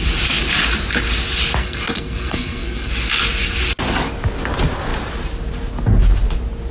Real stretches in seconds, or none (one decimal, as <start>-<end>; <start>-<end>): 0.0-1.6; 2.9-6.7

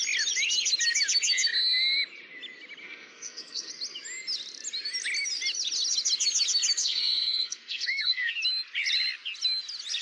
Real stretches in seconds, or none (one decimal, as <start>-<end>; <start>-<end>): 0.0-2.8; 3.7-6.8; 8.3-10.0

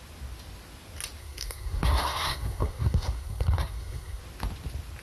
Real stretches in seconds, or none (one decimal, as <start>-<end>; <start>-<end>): 0.0-1.2; 4.2-5.0

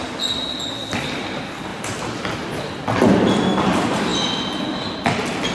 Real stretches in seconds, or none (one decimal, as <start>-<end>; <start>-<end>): 0.0-5.5